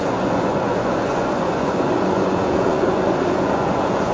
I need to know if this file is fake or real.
fake